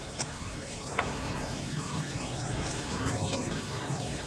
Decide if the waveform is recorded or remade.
remade